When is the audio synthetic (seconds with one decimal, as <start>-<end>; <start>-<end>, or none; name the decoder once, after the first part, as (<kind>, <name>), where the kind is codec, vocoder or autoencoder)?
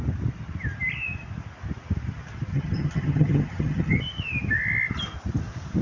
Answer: 2.5-4.0 (vocoder, HiFi-GAN)